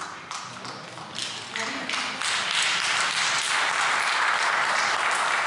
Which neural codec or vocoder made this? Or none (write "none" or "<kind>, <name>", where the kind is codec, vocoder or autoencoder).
none